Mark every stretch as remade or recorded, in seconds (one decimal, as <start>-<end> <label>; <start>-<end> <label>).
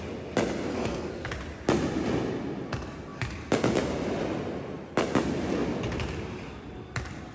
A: 0.0-0.7 recorded; 0.7-1.3 remade; 1.3-7.3 recorded